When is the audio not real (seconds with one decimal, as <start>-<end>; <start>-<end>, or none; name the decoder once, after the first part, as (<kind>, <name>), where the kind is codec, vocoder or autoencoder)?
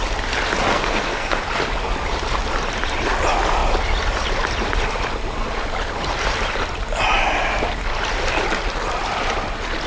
0.7-1.4 (codec, SNAC)